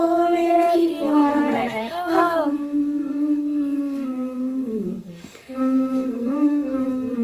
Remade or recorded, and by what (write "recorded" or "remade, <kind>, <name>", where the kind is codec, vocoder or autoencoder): remade, codec, SNAC